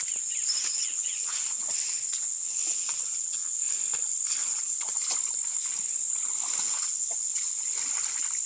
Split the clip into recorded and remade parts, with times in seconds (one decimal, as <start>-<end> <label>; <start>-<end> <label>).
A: 0.0-0.7 recorded; 0.7-3.6 remade; 3.6-4.4 recorded; 4.4-4.9 remade; 4.9-6.6 recorded; 6.6-7.7 remade; 7.7-8.5 recorded